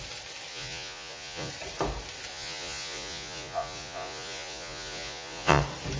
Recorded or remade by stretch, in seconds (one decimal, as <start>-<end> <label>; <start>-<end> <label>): 0.0-0.5 recorded; 0.5-1.5 remade; 1.5-2.3 recorded; 2.3-5.6 remade; 5.6-6.0 recorded